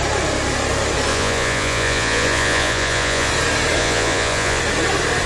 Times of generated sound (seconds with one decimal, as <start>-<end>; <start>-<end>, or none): 1.1-3.3; 3.8-4.6